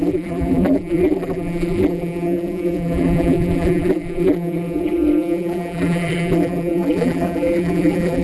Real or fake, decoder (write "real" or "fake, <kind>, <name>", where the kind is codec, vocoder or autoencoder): fake, vocoder, BigVGAN v2